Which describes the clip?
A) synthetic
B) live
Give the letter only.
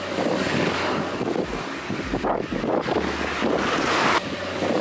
A